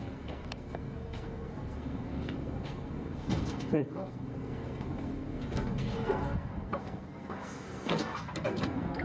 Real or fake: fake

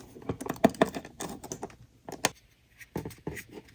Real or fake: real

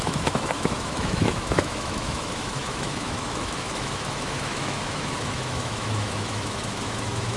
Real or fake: fake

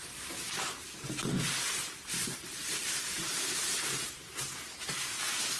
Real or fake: fake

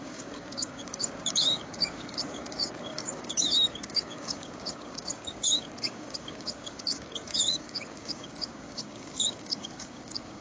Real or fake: fake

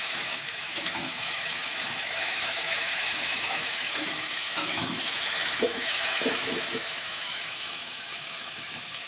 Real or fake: fake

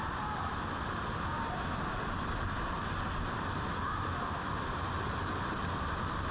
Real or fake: real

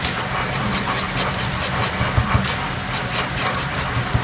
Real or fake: real